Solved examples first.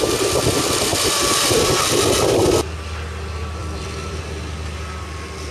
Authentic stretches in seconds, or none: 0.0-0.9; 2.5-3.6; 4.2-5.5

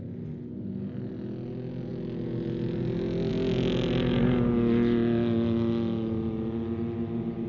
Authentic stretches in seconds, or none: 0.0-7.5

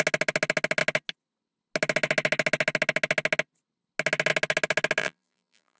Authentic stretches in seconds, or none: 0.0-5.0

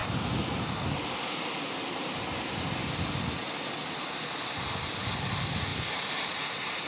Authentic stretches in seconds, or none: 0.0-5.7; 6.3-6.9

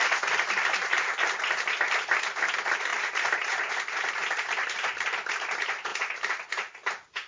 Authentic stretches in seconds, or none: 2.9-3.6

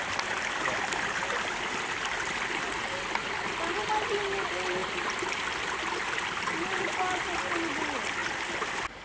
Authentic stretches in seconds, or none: 0.0-9.0

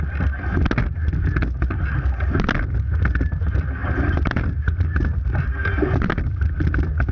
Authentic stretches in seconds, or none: 0.0-3.8